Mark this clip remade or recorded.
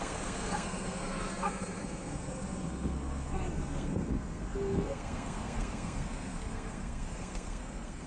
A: remade